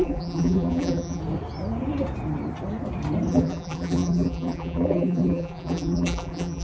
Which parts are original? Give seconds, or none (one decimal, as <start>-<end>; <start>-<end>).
1.2-3.3

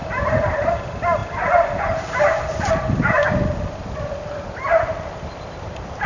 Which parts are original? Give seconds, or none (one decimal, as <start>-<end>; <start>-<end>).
0.7-6.1